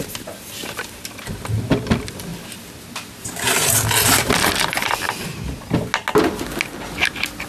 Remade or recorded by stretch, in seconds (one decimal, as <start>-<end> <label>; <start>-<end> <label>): 0.0-7.5 recorded